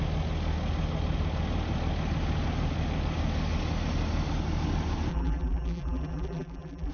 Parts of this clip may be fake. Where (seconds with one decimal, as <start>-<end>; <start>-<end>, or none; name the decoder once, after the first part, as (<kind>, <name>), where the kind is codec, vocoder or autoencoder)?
5.1-6.9 (vocoder, BigVGAN v2)